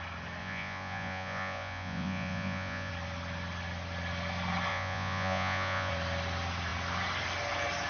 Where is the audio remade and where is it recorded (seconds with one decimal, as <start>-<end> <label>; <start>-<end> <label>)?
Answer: 0.0-0.4 recorded; 0.4-2.9 remade; 2.9-4.7 recorded; 4.7-5.9 remade; 5.9-7.9 recorded